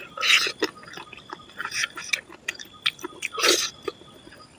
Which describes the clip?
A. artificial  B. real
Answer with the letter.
B